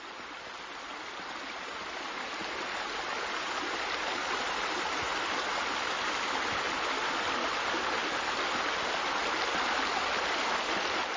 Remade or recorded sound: recorded